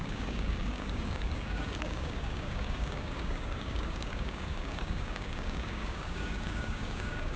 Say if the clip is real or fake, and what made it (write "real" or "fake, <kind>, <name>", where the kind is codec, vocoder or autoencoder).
fake, codec, DAC